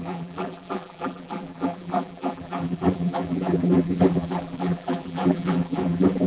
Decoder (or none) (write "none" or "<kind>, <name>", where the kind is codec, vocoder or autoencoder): vocoder, BigVGAN v2